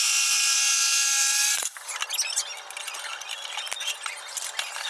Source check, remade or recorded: recorded